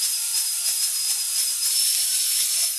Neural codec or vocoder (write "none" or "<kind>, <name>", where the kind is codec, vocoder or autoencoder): vocoder, BigVGAN v2